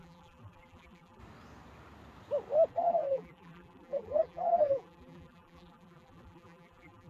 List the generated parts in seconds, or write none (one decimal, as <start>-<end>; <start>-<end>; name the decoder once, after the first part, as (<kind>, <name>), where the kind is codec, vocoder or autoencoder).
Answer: 0.0-1.2 (vocoder, BigVGAN v2); 2.7-7.1